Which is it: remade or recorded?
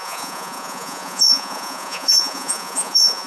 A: remade